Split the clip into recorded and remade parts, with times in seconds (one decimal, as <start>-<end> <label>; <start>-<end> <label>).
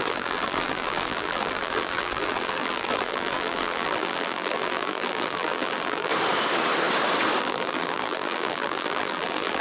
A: 0.0-6.1 remade; 6.1-7.4 recorded; 7.4-9.6 remade